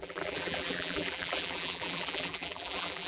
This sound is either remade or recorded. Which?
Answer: remade